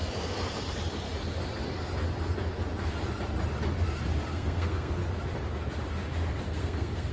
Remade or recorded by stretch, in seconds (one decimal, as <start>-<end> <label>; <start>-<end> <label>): 0.0-4.3 recorded; 4.3-5.0 remade; 5.0-6.5 recorded; 6.5-7.1 remade

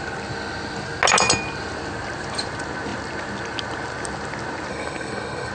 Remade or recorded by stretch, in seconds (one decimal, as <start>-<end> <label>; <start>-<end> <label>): 0.0-4.7 recorded; 4.7-5.5 remade

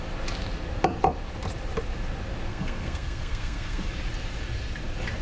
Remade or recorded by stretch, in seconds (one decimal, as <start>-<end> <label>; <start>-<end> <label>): 0.0-2.5 recorded; 2.5-3.9 remade; 3.9-5.2 recorded

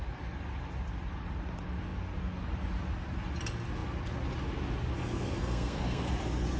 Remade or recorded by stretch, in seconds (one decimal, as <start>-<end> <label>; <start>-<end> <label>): 0.0-5.0 recorded; 5.0-6.1 remade; 6.1-6.6 recorded